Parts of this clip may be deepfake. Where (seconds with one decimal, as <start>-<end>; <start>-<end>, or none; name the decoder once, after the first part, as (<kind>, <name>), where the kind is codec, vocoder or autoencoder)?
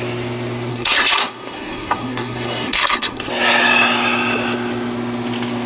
0.7-3.3 (codec, SNAC)